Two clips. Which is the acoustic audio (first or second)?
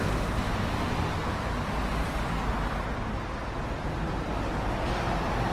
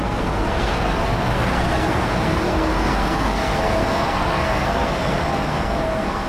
first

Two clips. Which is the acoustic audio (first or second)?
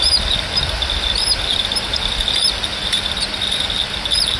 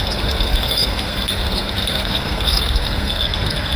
first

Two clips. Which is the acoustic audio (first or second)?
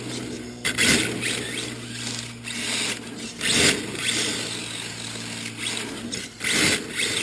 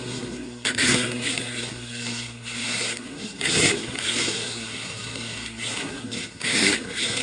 first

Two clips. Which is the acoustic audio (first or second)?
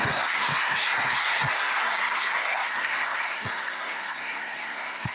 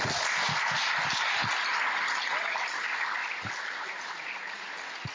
second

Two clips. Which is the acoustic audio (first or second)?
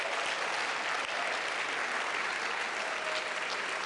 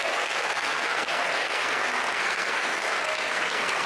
first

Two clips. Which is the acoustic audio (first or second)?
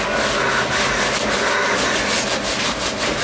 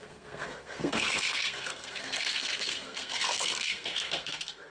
first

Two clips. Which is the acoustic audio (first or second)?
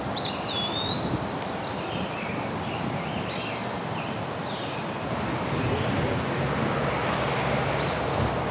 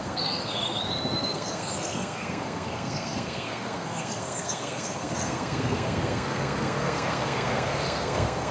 first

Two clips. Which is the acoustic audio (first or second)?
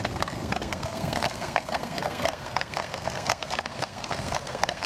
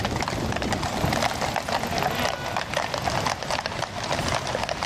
second